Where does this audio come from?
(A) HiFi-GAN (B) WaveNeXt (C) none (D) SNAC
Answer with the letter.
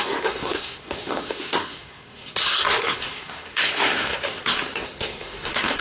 D